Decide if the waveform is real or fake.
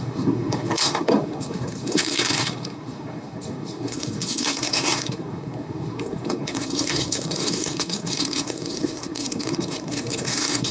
fake